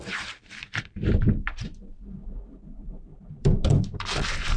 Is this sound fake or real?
fake